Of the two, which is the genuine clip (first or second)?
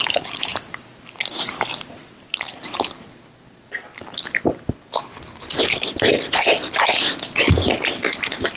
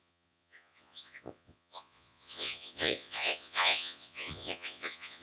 first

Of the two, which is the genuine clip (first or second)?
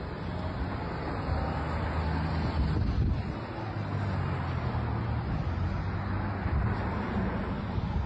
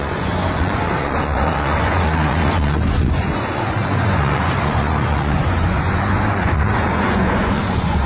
first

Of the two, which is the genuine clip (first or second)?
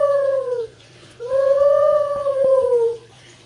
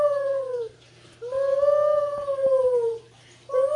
second